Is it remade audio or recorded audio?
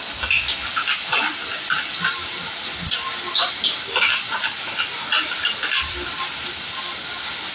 recorded